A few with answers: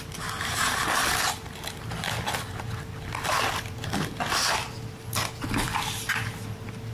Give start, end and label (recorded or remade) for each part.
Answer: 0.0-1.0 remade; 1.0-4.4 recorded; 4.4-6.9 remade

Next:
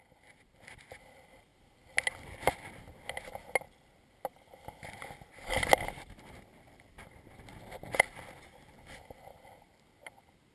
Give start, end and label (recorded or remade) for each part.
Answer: 0.0-10.5 recorded

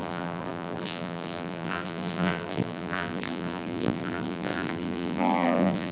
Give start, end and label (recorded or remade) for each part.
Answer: 0.0-5.9 remade

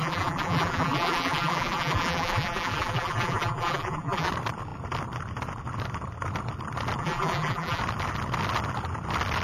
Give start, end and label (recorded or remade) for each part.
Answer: 0.0-4.3 remade; 4.3-7.0 recorded; 7.0-7.8 remade; 7.8-9.4 recorded

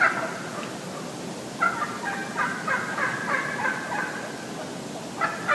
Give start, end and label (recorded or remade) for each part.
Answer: 0.0-5.5 recorded

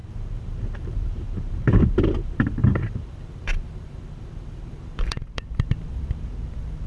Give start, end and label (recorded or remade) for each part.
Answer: 0.0-6.9 remade

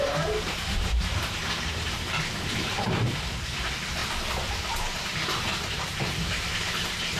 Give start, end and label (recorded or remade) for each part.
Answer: 0.0-4.0 remade; 4.0-4.8 recorded; 4.8-7.2 remade

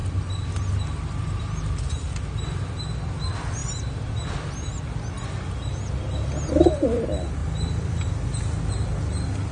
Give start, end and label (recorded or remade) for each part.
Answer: 0.0-9.5 recorded